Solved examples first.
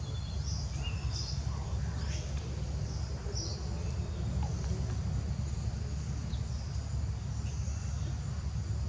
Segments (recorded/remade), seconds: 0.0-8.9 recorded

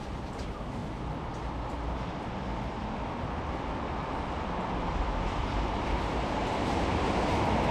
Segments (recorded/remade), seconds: 0.0-0.8 remade; 0.8-5.4 recorded; 5.4-7.7 remade

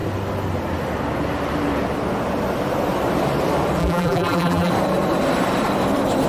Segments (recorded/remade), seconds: 0.0-3.8 recorded; 3.8-4.7 remade; 4.7-6.3 recorded